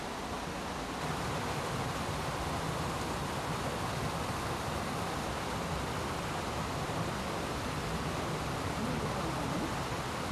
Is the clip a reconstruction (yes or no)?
no